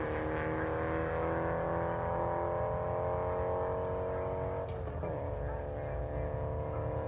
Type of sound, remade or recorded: recorded